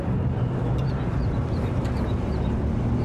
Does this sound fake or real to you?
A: real